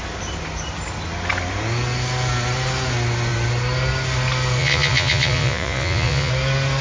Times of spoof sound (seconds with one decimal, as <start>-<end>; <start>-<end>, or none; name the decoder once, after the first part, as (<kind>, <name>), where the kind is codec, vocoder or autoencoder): 4.6-6.3 (vocoder, Vocos)

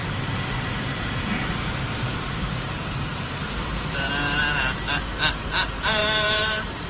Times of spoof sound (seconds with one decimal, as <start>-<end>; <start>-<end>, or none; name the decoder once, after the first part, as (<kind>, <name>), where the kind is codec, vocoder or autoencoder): 0.0-4.1 (vocoder, BigVGAN v2); 6.0-6.9